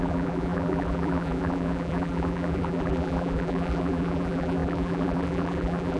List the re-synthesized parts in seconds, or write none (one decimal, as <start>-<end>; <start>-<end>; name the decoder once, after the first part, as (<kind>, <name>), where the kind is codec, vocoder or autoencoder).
0.0-6.0 (vocoder, BigVGAN v2)